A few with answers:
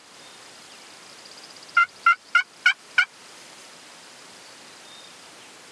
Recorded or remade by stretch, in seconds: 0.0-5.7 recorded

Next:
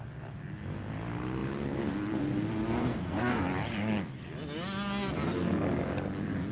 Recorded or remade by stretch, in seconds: 0.0-2.8 recorded; 2.8-3.4 remade; 3.4-6.5 recorded

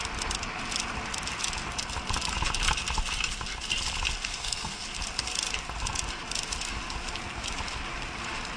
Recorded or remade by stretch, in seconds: 0.0-4.3 recorded; 4.3-4.8 remade; 4.8-8.6 recorded

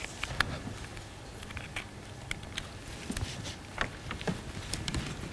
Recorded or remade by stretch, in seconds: 0.0-5.3 recorded

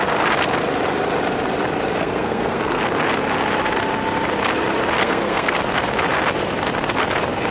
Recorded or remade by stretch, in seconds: 0.0-2.0 recorded; 2.0-2.8 remade; 2.8-5.0 recorded; 5.0-5.6 remade; 5.6-7.5 recorded

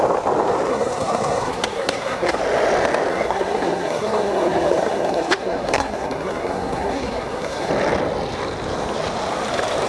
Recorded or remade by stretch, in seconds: 0.0-0.7 recorded; 0.7-2.4 remade; 2.4-3.1 recorded; 3.1-7.7 remade; 7.7-9.9 recorded

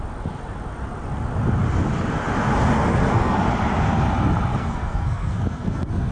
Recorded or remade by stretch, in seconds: 0.0-2.9 recorded; 2.9-3.5 remade; 3.5-4.5 recorded; 4.5-6.1 remade

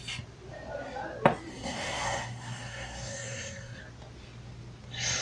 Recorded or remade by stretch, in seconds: 0.0-1.5 recorded; 1.5-3.8 remade; 3.8-5.2 recorded